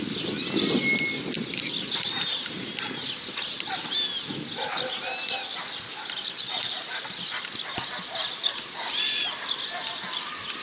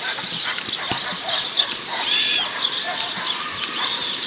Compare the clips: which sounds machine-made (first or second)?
second